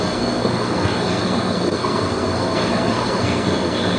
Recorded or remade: remade